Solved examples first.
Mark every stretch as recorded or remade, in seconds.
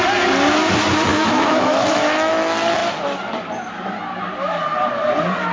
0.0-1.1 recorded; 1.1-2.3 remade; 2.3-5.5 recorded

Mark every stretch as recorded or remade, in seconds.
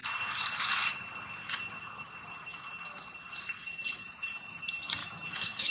0.0-4.0 recorded; 4.0-4.6 remade; 4.6-5.0 recorded; 5.0-5.7 remade